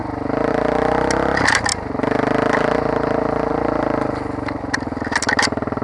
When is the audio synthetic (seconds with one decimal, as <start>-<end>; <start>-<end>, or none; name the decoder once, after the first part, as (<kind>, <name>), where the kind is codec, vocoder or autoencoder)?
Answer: none